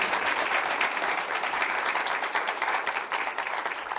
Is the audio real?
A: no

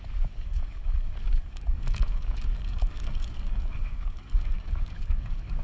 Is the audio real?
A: no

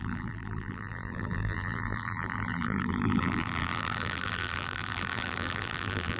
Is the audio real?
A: no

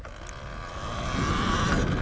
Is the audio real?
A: yes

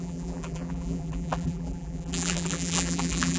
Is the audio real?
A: no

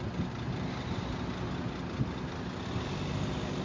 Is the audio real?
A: yes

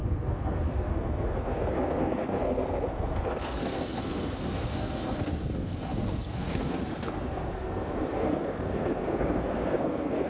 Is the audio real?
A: no